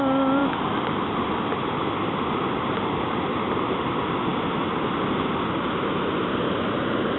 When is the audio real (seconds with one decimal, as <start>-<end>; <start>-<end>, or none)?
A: 0.0-7.2